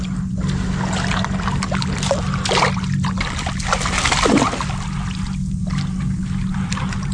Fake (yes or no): no